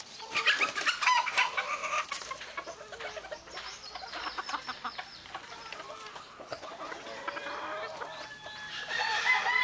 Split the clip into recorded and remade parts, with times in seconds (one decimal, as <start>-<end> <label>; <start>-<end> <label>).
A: 0.0-6.1 recorded; 6.1-6.7 remade; 6.7-9.6 recorded